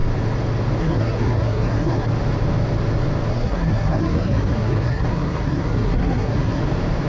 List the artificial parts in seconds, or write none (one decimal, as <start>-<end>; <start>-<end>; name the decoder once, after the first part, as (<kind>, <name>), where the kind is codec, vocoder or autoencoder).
0.8-2.1 (codec, SNAC); 3.3-6.6